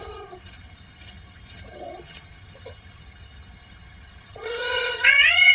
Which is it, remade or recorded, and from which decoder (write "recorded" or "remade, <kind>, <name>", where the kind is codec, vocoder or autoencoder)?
remade, vocoder, HiFi-GAN